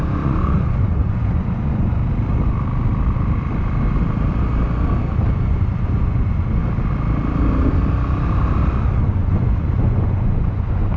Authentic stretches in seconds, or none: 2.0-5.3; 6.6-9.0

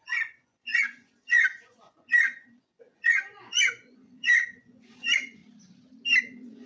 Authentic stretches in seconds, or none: 5.4-6.2

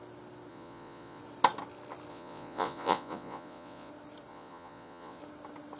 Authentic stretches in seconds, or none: 0.0-0.5; 1.2-2.1; 3.9-4.3; 5.2-5.8

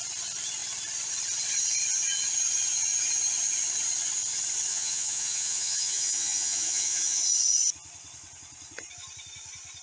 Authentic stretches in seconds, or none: 0.0-4.7; 7.2-9.8

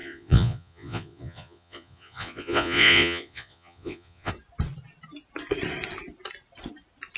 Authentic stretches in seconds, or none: 4.3-7.2

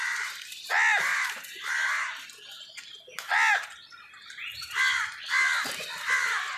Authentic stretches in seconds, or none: 0.0-6.6

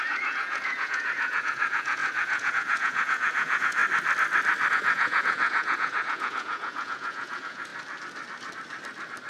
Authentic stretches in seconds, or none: 3.8-4.7; 7.7-9.3